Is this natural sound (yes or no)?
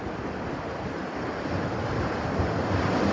yes